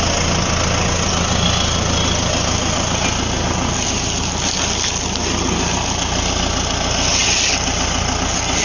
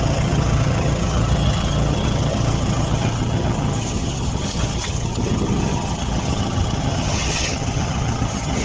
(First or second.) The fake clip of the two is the second